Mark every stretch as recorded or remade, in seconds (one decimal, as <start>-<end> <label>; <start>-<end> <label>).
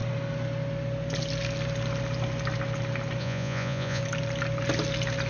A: 0.0-3.2 recorded; 3.2-4.0 remade; 4.0-5.3 recorded